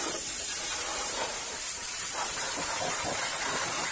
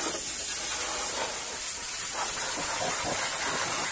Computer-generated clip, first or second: first